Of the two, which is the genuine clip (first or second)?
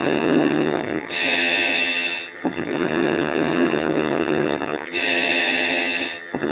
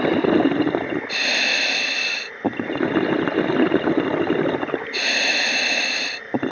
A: second